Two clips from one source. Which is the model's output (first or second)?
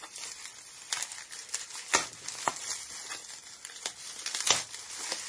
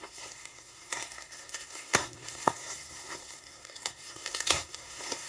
second